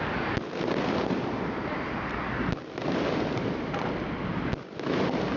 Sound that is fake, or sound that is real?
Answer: real